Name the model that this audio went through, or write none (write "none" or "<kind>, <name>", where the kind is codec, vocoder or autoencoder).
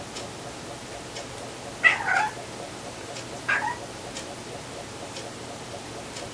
none